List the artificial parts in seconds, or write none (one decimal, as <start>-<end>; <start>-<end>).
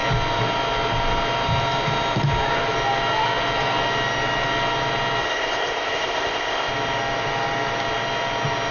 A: 5.2-6.7